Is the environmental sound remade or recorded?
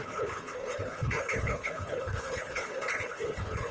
remade